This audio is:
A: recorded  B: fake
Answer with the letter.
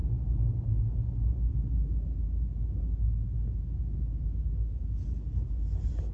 A